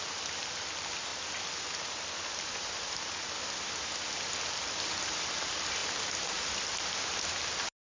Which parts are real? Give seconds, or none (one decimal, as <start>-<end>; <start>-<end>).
0.0-7.9